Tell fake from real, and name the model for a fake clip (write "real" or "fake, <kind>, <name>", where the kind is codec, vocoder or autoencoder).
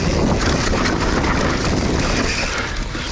real